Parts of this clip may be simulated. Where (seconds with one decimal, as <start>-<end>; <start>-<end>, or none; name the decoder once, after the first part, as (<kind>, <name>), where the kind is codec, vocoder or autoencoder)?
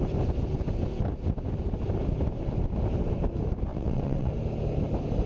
3.7-4.3 (vocoder, WaveNeXt)